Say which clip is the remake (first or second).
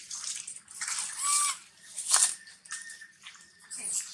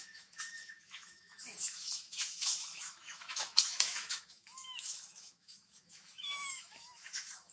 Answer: second